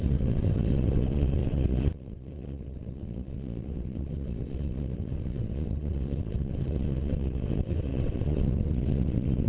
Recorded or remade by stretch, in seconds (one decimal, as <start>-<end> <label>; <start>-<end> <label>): 0.0-9.5 remade